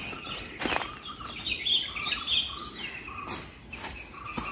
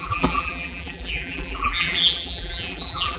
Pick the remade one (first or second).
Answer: second